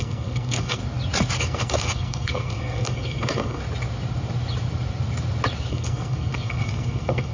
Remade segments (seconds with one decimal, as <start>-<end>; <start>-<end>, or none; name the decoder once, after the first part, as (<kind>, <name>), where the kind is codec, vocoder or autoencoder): 0.0-0.8 (codec, SNAC); 1.4-3.6; 5.7-7.3